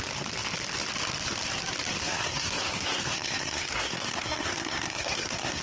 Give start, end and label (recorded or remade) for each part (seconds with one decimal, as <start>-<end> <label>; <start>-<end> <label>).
0.0-2.0 recorded; 2.0-5.6 remade